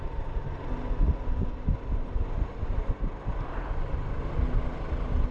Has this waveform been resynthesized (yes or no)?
no